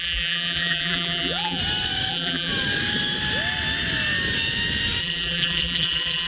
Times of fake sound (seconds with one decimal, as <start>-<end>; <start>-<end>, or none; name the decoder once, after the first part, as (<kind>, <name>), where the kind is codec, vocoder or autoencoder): 0.0-1.6 (vocoder, BigVGAN v2); 2.1-2.5; 5.0-6.3